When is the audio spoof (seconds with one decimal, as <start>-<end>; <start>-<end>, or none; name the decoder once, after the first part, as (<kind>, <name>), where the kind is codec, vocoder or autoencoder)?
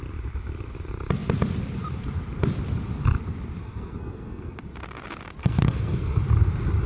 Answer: 3.6-4.6 (codec, SNAC); 5.4-6.2